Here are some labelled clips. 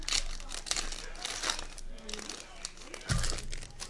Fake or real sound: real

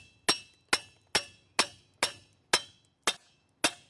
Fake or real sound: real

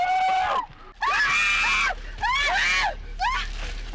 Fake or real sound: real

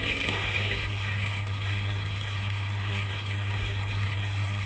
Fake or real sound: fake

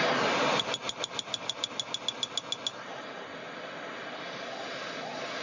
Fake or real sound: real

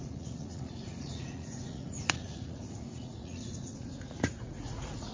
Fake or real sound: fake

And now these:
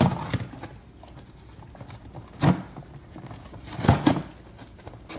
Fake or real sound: real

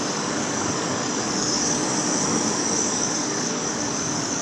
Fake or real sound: fake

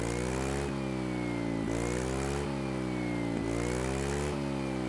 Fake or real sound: real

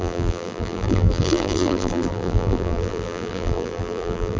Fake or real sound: fake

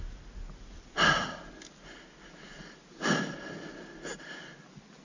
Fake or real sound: real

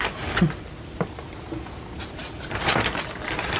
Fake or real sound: real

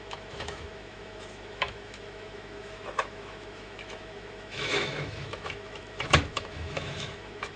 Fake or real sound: fake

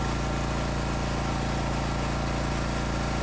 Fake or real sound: real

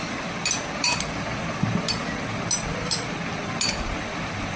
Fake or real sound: real